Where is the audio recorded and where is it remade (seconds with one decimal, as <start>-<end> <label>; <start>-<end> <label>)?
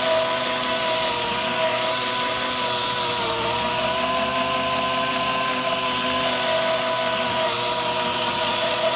0.0-8.1 recorded; 8.1-9.0 remade